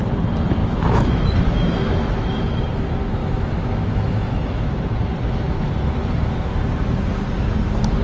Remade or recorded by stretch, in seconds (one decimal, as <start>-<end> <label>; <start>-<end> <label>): 0.0-0.6 recorded; 0.6-2.6 remade; 2.6-3.2 recorded; 3.2-4.7 remade; 4.7-8.0 recorded